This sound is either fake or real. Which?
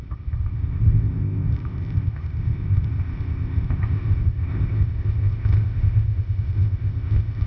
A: fake